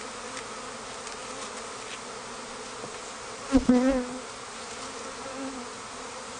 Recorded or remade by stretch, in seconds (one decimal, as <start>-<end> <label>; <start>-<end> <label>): 0.0-6.4 recorded

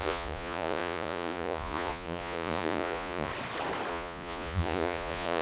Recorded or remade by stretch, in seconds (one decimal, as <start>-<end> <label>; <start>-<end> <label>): 0.0-3.3 remade; 3.3-3.9 recorded; 3.9-5.4 remade

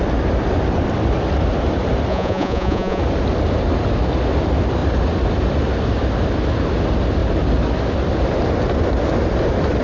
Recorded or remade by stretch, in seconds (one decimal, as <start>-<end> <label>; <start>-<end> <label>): 0.0-2.1 recorded; 2.1-3.0 remade; 3.0-9.8 recorded

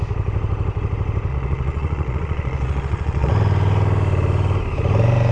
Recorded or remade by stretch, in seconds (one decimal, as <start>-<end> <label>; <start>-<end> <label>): 0.0-1.3 recorded; 1.3-3.3 remade; 3.3-5.3 recorded

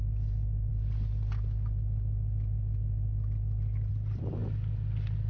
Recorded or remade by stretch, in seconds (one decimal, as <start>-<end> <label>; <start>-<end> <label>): 0.0-0.7 remade; 0.7-3.9 recorded; 3.9-4.4 remade; 4.4-5.3 recorded